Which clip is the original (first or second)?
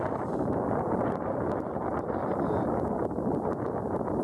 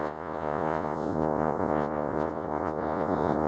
first